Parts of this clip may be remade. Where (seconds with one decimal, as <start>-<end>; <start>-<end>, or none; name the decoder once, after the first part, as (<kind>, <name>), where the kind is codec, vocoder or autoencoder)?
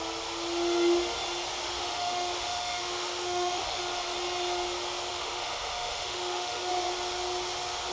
1.6-3.8 (autoencoder, DAC-VAE); 5.1-6.7